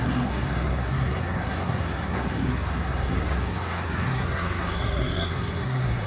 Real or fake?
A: fake